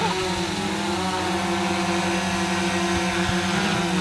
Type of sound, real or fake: real